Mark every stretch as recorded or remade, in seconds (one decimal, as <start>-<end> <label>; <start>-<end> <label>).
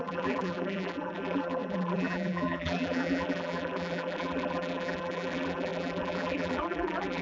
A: 0.0-7.2 remade